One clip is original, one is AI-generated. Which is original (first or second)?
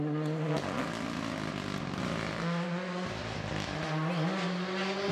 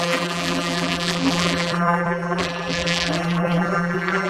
first